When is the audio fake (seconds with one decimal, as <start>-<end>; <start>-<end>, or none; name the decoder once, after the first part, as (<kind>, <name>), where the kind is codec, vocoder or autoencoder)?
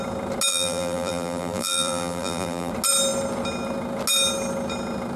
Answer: 0.5-2.7 (vocoder, BigVGAN v2)